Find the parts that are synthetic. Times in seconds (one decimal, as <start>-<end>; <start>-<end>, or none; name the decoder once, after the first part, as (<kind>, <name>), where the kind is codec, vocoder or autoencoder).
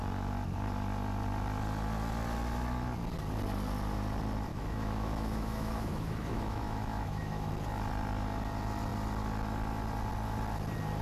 4.5-7.5 (autoencoder, DAC-VAE)